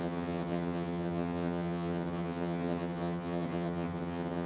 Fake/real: fake